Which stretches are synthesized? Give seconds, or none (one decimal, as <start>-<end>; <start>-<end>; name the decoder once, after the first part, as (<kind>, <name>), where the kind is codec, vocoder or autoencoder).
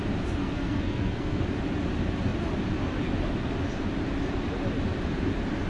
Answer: 0.4-1.4 (codec, SNAC)